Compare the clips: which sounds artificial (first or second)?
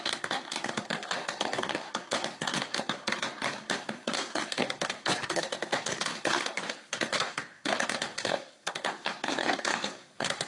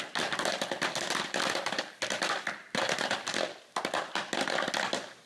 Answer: first